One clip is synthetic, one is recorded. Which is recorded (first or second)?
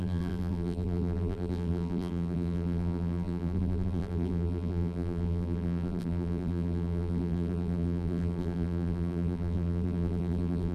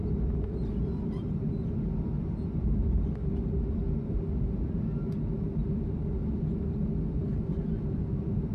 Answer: second